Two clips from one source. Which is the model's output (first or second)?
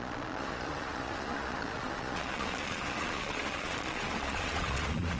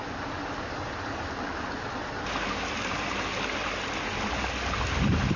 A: first